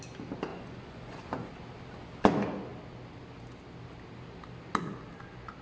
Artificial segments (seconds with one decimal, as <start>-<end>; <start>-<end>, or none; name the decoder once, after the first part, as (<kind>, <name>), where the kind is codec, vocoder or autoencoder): 0.5-1.5 (vocoder, Vocos)